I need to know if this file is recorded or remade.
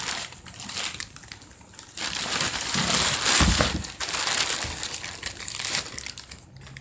recorded